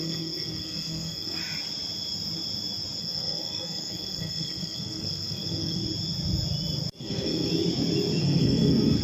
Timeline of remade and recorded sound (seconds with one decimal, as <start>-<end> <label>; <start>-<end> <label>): 0.0-1.4 remade; 1.4-3.0 recorded; 3.0-5.8 remade; 5.8-7.0 recorded; 7.0-7.5 remade; 7.5-8.2 recorded; 8.2-9.0 remade